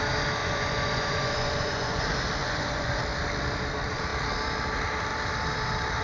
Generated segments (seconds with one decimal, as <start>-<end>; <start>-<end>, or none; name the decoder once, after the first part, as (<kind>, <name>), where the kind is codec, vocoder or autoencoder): 0.4-2.0 (vocoder, Vocos); 2.4-3.0